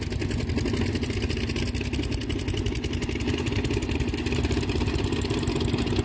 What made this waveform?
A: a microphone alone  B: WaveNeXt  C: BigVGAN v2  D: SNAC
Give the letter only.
A